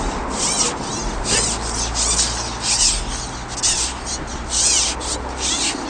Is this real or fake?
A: real